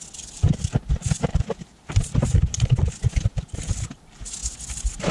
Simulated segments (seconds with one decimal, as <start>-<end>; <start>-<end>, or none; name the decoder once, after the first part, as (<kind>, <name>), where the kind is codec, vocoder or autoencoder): none